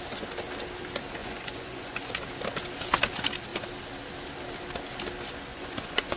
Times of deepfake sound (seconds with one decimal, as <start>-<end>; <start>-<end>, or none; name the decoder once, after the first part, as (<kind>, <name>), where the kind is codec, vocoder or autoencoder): 1.2-2.1 (vocoder, Vocos); 5.5-6.2